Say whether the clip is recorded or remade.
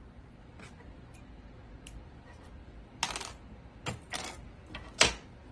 recorded